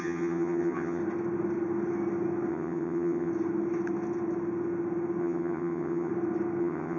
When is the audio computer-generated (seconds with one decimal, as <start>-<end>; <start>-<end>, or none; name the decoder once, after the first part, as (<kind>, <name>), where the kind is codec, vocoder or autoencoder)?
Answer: 0.0-1.0 (vocoder, HiFi-GAN); 2.5-3.3; 5.2-6.1; 6.6-7.0